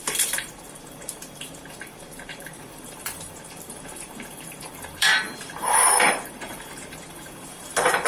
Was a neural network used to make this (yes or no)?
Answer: yes